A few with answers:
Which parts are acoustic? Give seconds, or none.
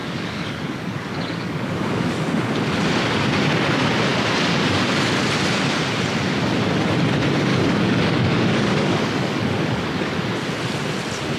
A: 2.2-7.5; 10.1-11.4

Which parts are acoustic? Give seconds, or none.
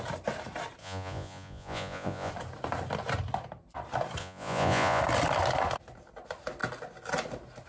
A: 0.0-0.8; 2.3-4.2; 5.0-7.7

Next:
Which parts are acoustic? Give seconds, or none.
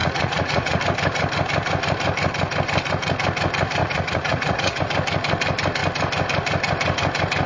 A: 0.8-3.8; 4.8-7.5